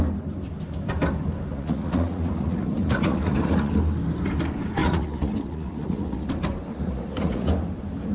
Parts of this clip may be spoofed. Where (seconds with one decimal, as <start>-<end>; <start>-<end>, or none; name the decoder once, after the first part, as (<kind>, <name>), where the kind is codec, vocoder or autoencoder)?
1.5-3.7 (vocoder, Vocos); 4.8-6.3; 6.7-7.5